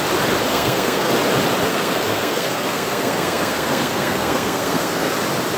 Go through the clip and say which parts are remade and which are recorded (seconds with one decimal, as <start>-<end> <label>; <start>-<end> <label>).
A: 0.0-0.5 recorded; 0.5-1.1 remade; 1.1-1.7 recorded; 1.7-5.1 remade; 5.1-5.6 recorded